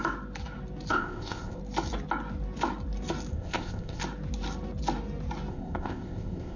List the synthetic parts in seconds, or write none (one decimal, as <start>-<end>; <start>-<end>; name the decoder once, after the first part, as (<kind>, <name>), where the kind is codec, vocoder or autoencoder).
0.9-1.6 (codec, ZipCodec); 3.3-4.0; 5.5-6.6